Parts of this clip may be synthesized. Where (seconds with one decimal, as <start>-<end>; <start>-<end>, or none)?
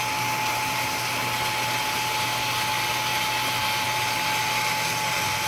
none